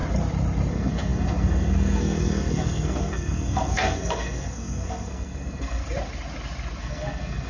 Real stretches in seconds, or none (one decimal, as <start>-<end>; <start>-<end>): 0.0-0.7; 5.8-6.8